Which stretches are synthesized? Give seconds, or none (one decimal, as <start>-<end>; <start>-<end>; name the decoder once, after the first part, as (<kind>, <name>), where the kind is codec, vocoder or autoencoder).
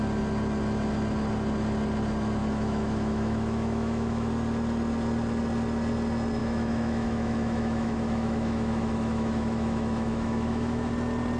2.4-4.3 (autoencoder, DAC-VAE); 6.4-10.9